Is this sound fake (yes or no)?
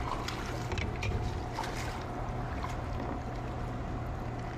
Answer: no